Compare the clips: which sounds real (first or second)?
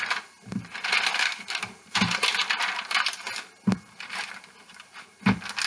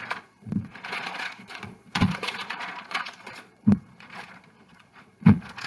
first